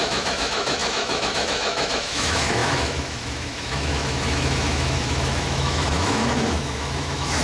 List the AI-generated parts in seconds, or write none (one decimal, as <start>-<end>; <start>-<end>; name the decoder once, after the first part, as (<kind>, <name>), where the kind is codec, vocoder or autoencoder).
0.0-7.4 (autoencoder, DAC-VAE)